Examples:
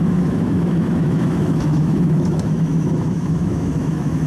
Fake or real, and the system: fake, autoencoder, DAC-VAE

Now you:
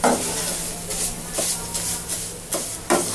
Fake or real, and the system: real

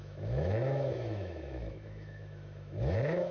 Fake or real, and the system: fake, autoencoder, DAC-VAE